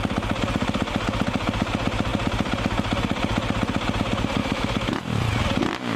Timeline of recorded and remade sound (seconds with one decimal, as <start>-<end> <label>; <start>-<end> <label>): 0.0-4.4 recorded; 4.4-5.2 remade; 5.2-6.0 recorded